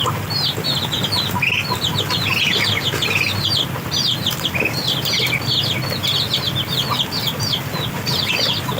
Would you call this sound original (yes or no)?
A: yes